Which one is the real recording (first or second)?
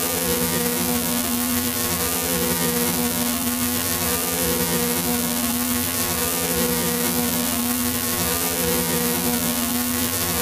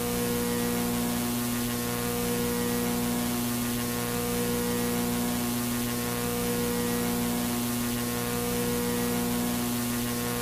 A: second